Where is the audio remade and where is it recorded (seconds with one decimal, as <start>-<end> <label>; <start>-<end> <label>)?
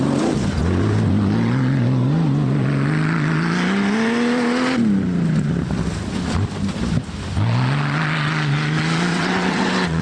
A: 0.0-9.1 recorded; 9.1-10.0 remade